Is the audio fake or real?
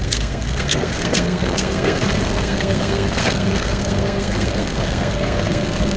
fake